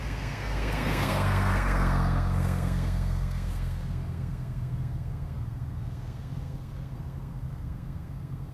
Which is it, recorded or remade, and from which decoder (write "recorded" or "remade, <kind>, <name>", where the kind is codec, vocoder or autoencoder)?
remade, codec, SNAC